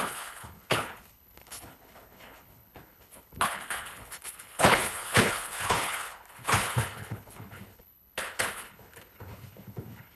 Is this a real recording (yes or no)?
no